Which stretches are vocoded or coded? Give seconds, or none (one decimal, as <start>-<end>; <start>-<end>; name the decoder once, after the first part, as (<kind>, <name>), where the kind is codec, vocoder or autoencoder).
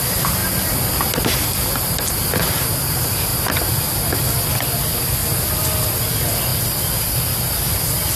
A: 3.3-4.0 (vocoder, BigVGAN v2); 6.5-8.2